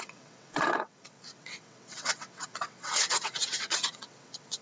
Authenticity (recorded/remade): remade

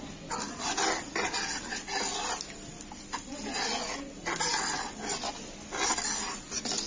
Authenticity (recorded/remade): recorded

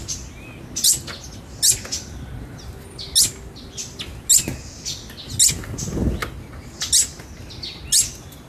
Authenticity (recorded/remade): recorded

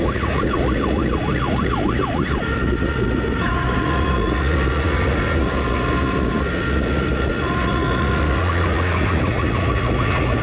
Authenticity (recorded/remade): remade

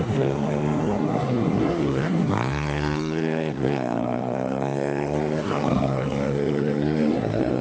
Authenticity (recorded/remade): remade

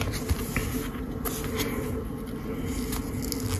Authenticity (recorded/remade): recorded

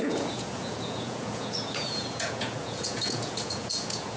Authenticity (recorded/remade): remade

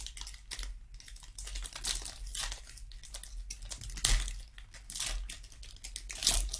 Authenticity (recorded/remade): recorded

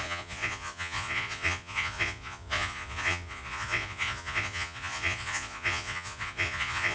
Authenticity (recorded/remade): remade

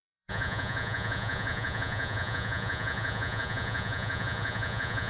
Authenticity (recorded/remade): remade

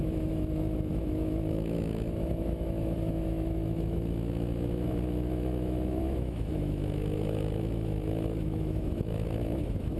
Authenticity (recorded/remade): remade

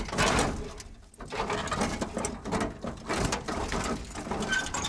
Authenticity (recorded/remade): recorded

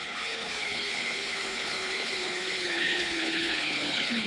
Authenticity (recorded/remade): remade